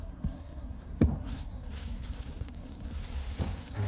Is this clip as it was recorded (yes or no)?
no